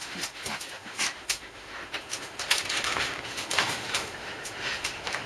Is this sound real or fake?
fake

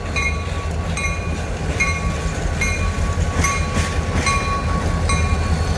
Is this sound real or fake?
real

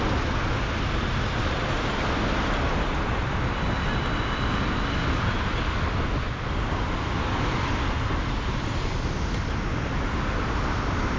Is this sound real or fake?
real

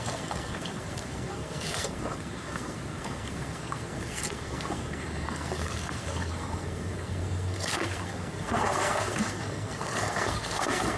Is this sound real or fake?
fake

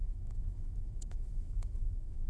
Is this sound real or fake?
fake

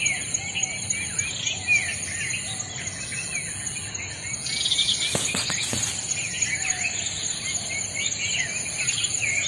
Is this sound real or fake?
real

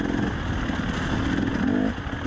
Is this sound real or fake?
real